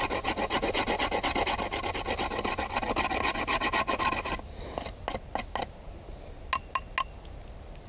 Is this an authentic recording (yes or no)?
yes